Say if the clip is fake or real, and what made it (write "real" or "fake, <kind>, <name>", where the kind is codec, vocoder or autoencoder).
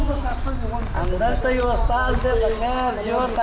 real